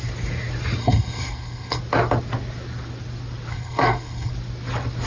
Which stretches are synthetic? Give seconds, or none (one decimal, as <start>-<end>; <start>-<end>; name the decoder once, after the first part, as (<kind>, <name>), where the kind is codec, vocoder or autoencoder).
0.8-1.8 (codec, SNAC); 3.5-4.3